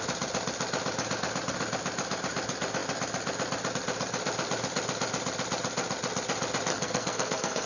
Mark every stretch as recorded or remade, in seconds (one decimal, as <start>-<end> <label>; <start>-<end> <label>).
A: 0.0-6.7 recorded; 6.7-7.7 remade